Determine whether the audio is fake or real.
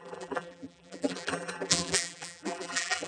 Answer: fake